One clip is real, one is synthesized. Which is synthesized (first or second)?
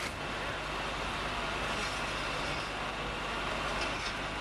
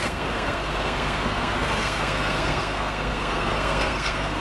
second